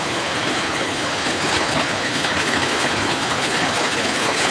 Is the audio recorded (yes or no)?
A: no